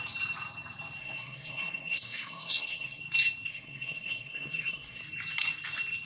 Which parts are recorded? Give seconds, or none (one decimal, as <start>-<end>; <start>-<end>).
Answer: 0.0-1.0; 3.0-3.5; 5.0-6.1